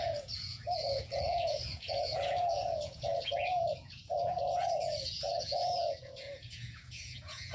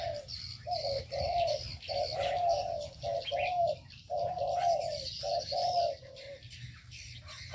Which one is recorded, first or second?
second